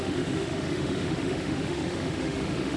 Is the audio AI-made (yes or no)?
yes